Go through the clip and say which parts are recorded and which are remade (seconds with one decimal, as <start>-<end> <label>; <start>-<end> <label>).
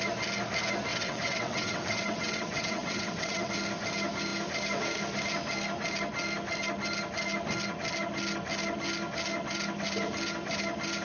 0.0-0.9 recorded; 0.9-3.5 remade; 3.5-11.0 recorded